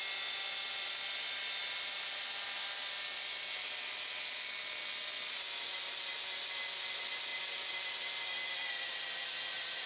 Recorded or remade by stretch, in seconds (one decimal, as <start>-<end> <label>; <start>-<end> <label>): 0.0-9.9 recorded